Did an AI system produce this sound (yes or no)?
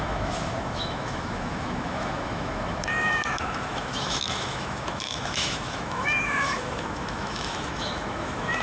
yes